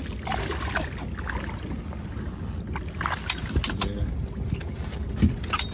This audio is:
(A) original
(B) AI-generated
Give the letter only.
A